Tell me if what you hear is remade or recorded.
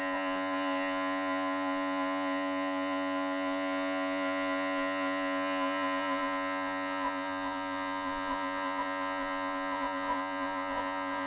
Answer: remade